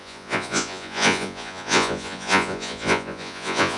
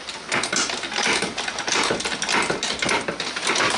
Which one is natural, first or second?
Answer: second